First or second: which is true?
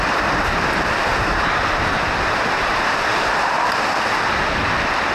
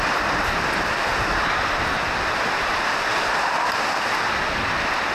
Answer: second